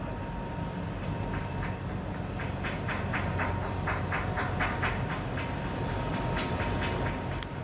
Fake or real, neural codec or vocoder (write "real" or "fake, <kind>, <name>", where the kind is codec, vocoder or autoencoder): real